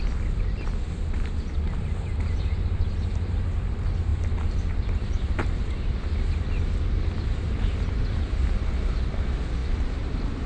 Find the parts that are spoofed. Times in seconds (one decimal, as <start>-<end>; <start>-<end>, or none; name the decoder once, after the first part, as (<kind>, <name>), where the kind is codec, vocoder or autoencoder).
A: 4.1-9.2 (vocoder, BigVGAN v2); 9.6-10.5